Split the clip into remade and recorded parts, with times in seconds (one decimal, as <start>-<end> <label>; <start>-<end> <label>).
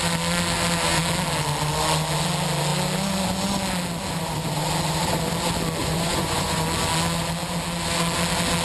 0.0-5.8 recorded; 5.8-6.6 remade; 6.6-8.6 recorded